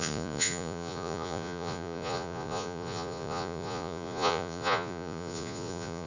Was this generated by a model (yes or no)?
yes